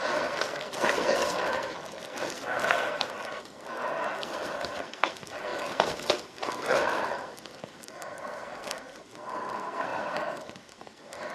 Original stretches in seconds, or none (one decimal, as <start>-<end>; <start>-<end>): none